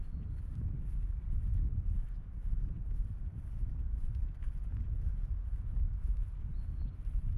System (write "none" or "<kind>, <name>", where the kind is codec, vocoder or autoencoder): none